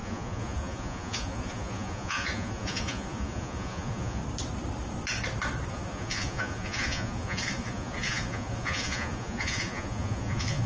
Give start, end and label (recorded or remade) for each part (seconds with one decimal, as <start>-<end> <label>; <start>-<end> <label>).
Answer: 0.0-4.2 remade; 4.2-5.7 recorded; 5.7-10.7 remade